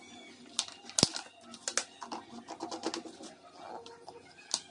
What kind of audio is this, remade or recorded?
recorded